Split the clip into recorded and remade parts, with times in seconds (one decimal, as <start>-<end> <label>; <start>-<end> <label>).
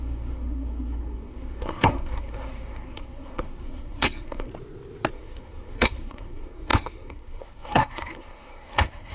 0.0-4.5 remade; 4.5-5.1 recorded; 5.1-9.1 remade